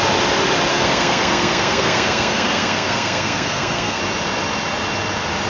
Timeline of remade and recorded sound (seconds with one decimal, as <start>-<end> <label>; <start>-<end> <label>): 0.0-0.7 recorded; 0.7-4.0 remade; 4.0-5.5 recorded